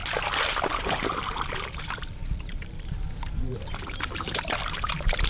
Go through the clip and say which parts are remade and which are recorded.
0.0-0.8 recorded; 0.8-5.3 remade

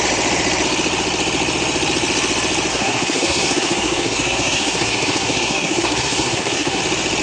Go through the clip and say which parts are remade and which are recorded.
0.0-2.7 recorded; 2.7-6.8 remade; 6.8-7.2 recorded

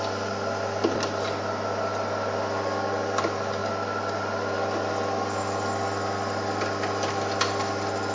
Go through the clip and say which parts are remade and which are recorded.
0.0-8.1 recorded

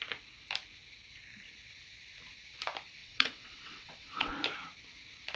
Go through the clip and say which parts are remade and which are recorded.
0.0-3.0 recorded; 3.0-4.3 remade; 4.3-5.4 recorded

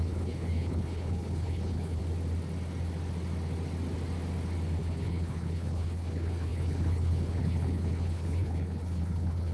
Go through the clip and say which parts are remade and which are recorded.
0.0-2.0 remade; 2.0-4.8 recorded; 4.8-9.5 remade

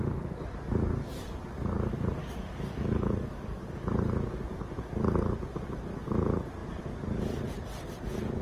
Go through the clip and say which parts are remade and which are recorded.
0.0-2.2 recorded; 2.2-3.6 remade; 3.6-8.4 recorded